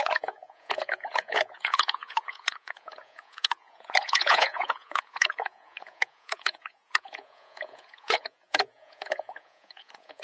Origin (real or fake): fake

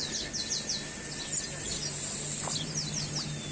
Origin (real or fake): real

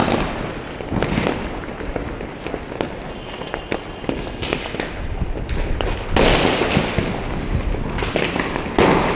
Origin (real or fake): real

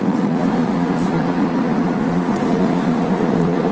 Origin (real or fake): fake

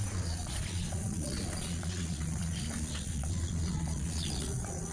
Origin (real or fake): fake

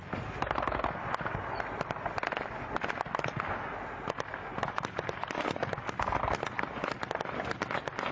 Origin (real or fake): real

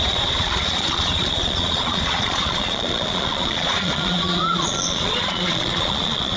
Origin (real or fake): fake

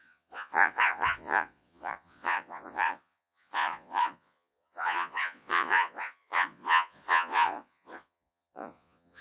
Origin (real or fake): fake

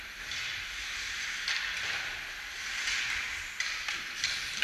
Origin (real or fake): real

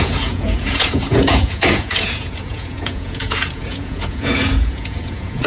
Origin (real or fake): fake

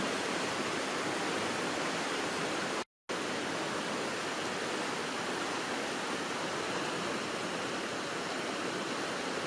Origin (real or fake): real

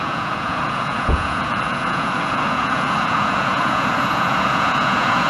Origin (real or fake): fake